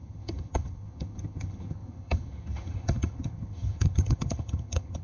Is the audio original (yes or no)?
no